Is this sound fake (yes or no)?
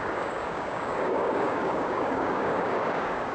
yes